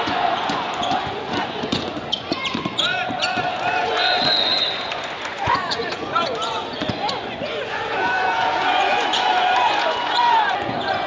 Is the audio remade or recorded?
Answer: remade